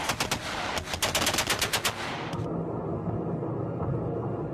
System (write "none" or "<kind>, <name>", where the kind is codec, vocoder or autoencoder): none